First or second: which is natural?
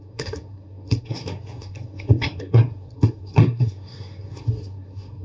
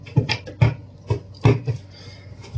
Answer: second